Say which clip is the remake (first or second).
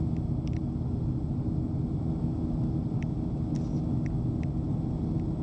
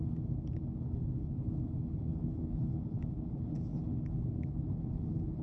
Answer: second